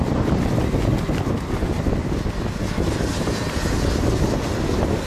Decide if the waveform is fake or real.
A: real